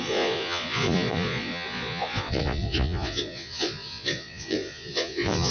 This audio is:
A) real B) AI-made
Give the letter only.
B